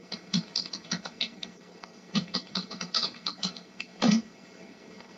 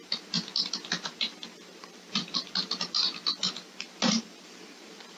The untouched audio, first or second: second